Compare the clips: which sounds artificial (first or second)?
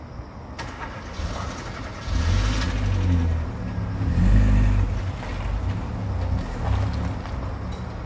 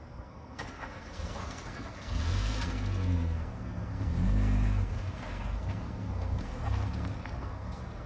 second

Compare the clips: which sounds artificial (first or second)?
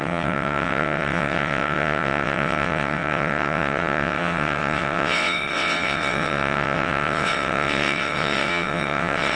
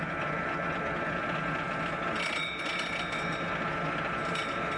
first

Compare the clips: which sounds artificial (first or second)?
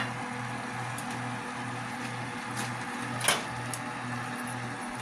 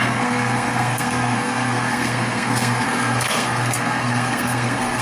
second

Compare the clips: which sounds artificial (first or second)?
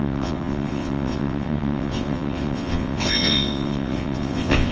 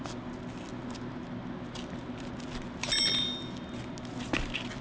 first